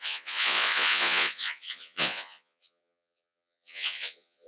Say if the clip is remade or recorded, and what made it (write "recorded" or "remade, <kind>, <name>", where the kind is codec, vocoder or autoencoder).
remade, vocoder, Vocos